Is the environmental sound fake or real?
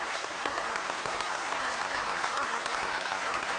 fake